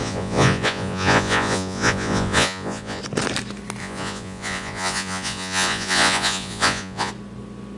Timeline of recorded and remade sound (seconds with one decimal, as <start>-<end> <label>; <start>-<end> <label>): 0.0-3.0 remade; 3.0-3.8 recorded; 3.8-7.1 remade; 7.1-7.8 recorded